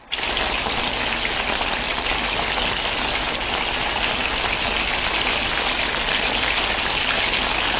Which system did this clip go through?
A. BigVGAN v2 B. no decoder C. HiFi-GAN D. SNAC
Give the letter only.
B